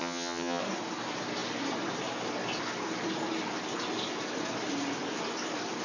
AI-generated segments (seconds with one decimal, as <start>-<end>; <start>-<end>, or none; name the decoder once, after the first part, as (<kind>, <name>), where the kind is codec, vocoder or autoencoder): 0.0-0.6 (vocoder, HiFi-GAN)